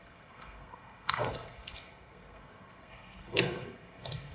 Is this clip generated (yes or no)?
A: yes